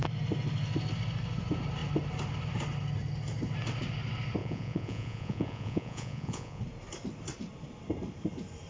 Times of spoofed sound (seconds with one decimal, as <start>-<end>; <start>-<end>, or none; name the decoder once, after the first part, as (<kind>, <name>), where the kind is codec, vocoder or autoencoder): 4.4-6.6 (vocoder, Vocos)